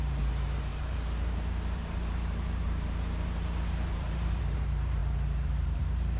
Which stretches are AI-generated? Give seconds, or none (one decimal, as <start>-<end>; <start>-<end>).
0.0-6.2